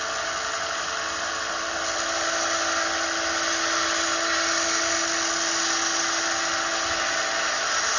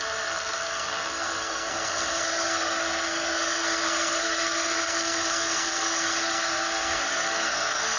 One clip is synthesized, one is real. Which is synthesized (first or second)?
second